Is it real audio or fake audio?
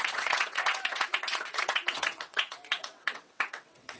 fake